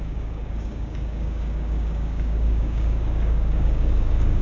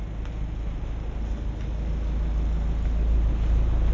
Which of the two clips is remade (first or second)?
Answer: first